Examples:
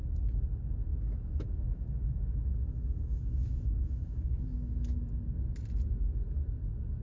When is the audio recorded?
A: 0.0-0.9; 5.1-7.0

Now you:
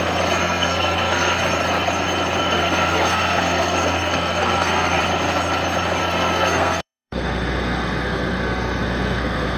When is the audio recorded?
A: 0.0-0.4; 1.4-2.4; 5.0-6.0

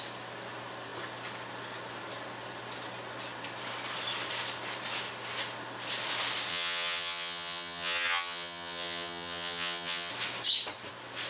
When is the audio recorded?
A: 0.0-6.5; 10.1-11.3

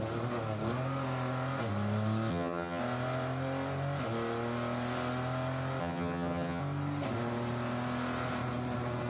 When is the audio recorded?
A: 0.0-2.3; 2.8-5.8; 6.6-9.1

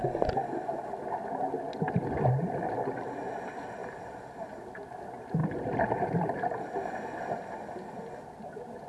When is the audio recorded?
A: 0.0-3.8; 4.8-5.4; 7.7-8.9

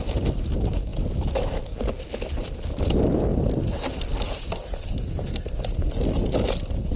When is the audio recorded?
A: 0.0-7.0